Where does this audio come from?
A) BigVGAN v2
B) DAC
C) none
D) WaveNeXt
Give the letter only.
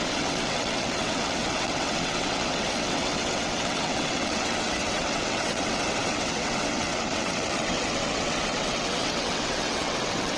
D